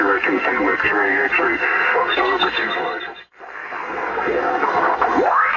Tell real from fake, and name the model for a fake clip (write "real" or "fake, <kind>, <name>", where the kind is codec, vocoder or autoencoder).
fake, codec, SNAC